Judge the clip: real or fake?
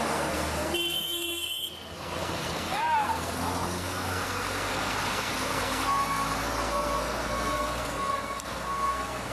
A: fake